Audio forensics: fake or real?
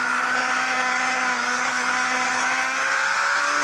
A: fake